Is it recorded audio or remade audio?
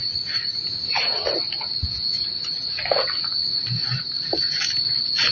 remade